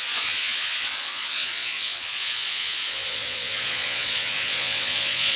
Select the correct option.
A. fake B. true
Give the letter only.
A